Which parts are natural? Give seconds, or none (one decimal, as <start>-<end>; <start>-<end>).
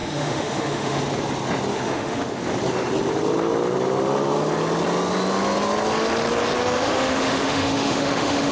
1.0-1.7; 2.4-6.6